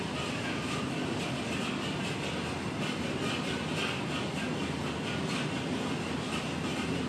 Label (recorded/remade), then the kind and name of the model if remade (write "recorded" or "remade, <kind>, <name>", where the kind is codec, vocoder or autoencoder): recorded